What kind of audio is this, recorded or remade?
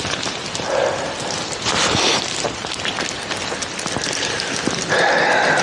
recorded